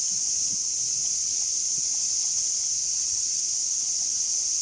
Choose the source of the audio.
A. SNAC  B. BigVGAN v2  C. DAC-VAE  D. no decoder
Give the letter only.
B